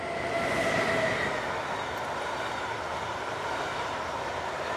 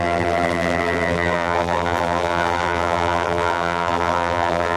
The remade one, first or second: second